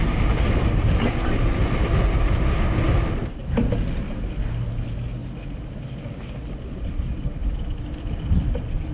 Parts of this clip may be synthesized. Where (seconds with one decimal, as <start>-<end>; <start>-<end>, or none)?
none